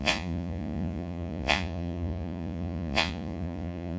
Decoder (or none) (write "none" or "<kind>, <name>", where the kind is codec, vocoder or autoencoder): vocoder, Vocos